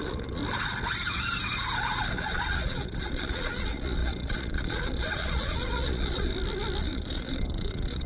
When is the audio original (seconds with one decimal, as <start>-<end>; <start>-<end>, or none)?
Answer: 0.4-2.1; 6.3-6.8

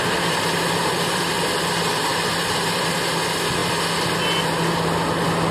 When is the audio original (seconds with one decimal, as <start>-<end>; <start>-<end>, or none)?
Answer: 0.0-5.5

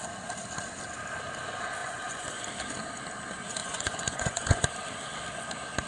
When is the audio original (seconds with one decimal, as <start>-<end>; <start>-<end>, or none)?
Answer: 0.0-1.8; 2.4-3.6; 4.7-5.9